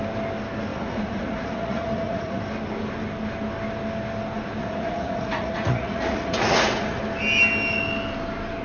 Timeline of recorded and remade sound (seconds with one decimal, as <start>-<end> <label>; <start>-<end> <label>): 0.0-0.7 recorded; 0.7-2.4 remade; 2.4-4.6 recorded; 4.6-7.0 remade; 7.0-8.6 recorded